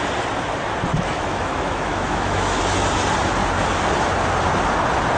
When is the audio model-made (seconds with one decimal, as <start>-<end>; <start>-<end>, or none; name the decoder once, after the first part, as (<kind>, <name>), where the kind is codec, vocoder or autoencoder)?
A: 0.9-2.6 (autoencoder, DAC-VAE)